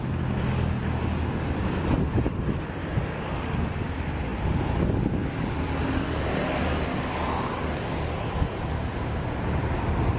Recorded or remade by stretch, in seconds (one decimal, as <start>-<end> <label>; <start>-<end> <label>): 0.0-4.3 recorded; 4.3-8.7 remade; 8.7-10.2 recorded